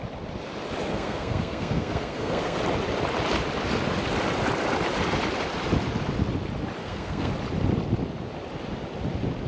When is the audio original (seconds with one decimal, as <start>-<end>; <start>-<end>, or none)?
0.0-0.9; 2.6-6.8; 7.3-9.5